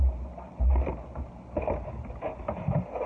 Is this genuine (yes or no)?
yes